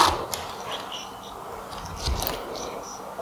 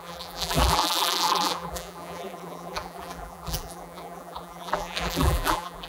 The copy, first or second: second